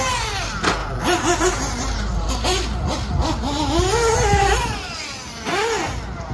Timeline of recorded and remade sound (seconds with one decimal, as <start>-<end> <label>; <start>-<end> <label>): 0.0-0.8 recorded; 0.8-2.3 remade; 2.3-6.3 recorded